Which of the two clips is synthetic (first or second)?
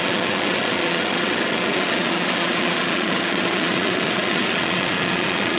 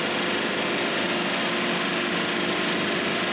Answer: first